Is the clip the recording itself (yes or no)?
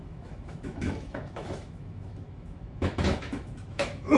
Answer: no